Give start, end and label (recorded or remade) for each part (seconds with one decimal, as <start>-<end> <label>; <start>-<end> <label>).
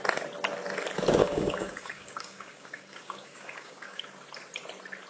0.0-1.2 recorded; 1.2-4.0 remade; 4.0-5.1 recorded